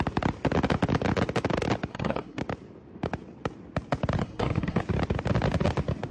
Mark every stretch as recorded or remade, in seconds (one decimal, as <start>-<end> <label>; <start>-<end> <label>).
0.0-1.9 recorded; 1.9-2.4 remade; 2.4-4.2 recorded; 4.2-4.8 remade; 4.8-6.1 recorded